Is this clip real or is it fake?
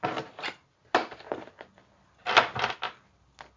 real